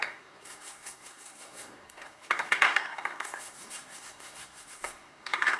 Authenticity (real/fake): fake